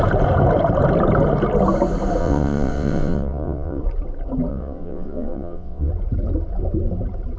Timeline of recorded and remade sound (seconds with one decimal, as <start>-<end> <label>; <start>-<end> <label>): 0.0-2.2 recorded; 2.2-3.8 remade; 3.8-4.5 recorded; 4.5-5.9 remade; 5.9-7.4 recorded